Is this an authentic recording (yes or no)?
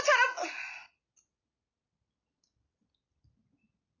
yes